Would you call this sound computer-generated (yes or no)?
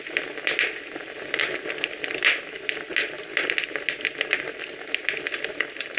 no